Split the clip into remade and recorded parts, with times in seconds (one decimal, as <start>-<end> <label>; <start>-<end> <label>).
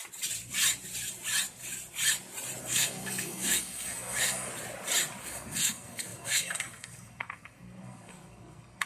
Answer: 0.0-2.6 recorded; 2.6-4.5 remade; 4.5-5.2 recorded; 5.2-8.9 remade